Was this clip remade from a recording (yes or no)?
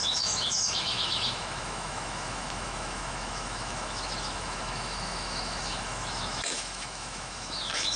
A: yes